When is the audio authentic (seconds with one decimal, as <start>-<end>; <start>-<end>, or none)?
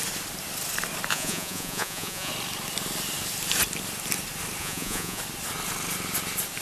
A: 0.0-1.1; 2.3-4.6; 5.2-6.6